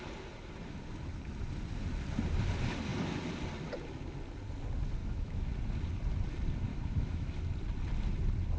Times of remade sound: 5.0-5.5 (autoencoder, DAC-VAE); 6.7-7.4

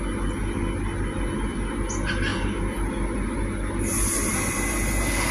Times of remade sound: none

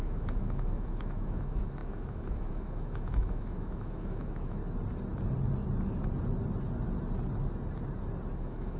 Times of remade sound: 0.0-4.6 (autoencoder, DAC-VAE); 8.4-8.8

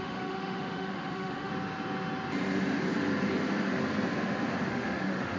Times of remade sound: 0.0-1.5 (autoencoder, DAC-VAE); 4.7-5.4